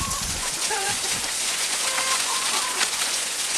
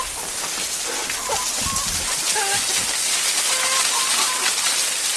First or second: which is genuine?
second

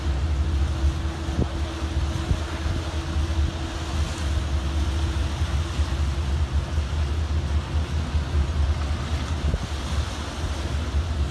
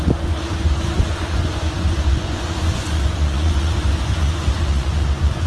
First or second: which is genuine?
first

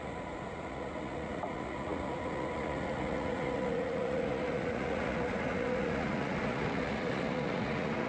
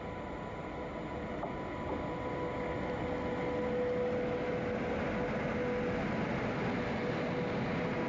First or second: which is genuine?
second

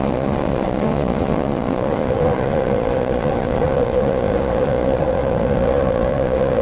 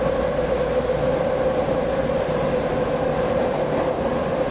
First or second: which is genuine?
second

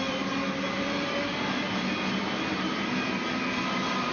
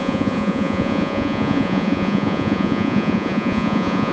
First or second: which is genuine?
first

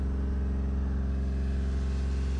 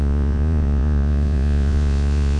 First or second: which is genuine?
first